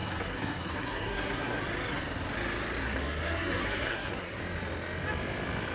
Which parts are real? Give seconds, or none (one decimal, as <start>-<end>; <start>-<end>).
1.6-2.8; 4.4-5.7